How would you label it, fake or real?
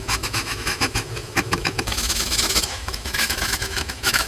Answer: fake